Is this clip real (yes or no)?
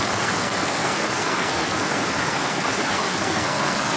no